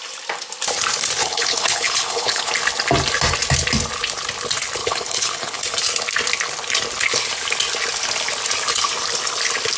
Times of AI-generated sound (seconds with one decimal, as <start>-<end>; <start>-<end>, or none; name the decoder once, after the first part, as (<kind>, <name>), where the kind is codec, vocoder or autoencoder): 1.2-2.5 (codec, HILCodec); 4.8-5.6